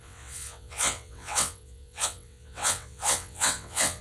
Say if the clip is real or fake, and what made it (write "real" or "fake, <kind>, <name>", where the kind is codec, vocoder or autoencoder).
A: fake, vocoder, WaveNeXt